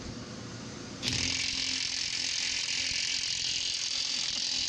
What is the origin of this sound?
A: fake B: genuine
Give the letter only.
B